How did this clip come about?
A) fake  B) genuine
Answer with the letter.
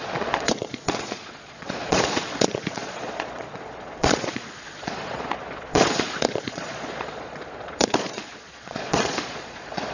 A